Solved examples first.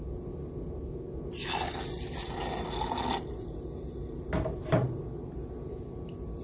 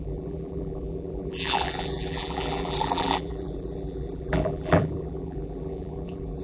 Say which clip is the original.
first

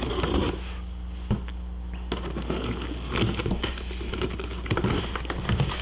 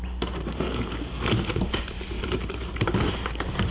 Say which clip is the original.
first